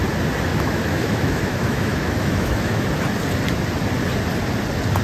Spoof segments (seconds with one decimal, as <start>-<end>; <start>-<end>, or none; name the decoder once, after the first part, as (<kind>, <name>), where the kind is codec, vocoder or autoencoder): 0.5-2.8 (autoencoder, DAC-VAE)